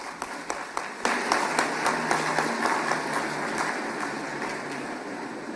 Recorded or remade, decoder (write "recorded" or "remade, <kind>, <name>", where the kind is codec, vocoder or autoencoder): recorded